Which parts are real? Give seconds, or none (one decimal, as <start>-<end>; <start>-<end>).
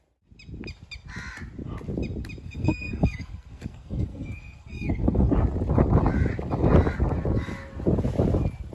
0.0-2.4; 5.3-8.7